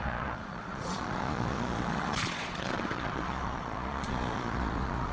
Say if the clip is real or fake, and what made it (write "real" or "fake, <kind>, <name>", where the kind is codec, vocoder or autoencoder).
fake, vocoder, Vocos